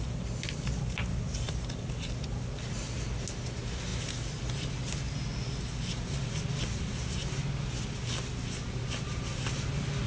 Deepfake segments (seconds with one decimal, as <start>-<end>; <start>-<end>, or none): none

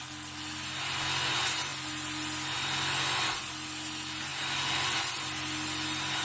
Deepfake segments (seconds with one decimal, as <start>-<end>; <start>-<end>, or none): none

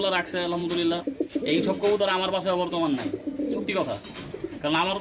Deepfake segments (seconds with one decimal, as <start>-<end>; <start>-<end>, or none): none

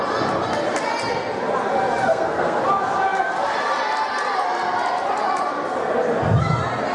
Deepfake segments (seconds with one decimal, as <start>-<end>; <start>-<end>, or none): 2.1-2.6

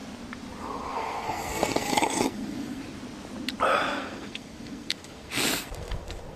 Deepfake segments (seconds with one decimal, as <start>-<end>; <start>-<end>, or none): 0.6-2.8; 3.9-6.4